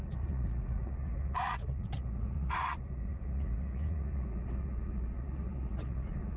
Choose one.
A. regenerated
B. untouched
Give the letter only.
A